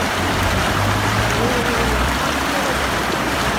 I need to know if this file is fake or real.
fake